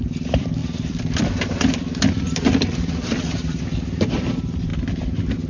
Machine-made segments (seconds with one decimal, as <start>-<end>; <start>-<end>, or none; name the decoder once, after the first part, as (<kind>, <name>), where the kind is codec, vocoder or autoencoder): 0.0-4.7 (vocoder, BigVGAN v2)